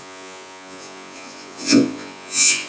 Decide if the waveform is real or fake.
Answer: fake